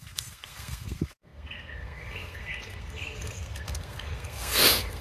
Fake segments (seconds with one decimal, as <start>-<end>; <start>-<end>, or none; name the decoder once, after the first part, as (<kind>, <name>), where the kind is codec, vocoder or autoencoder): 0.0-5.0 (codec, SNAC)